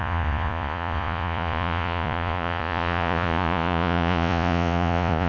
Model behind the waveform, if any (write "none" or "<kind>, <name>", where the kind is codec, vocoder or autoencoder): vocoder, Vocos